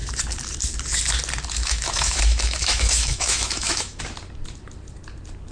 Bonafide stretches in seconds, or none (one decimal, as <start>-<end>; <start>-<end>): 0.0-1.6; 4.0-5.5